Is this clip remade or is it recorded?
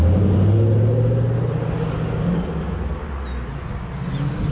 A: recorded